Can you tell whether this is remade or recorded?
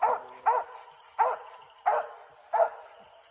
recorded